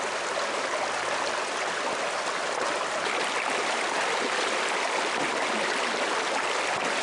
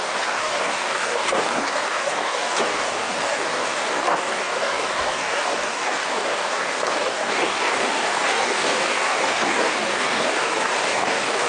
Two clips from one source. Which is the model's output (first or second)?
second